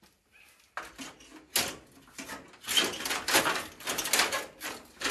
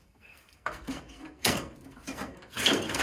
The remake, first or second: second